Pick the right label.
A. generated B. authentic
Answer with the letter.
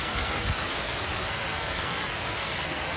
A